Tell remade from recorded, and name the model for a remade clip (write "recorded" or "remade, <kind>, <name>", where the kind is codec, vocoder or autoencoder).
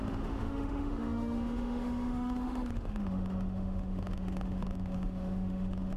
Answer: remade, autoencoder, DAC-VAE